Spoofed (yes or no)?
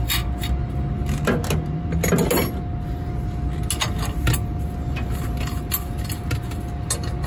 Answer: no